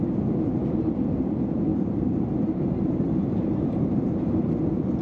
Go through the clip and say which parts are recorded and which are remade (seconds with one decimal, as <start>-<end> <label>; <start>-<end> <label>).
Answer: 0.0-1.7 recorded; 1.7-4.5 remade; 4.5-5.0 recorded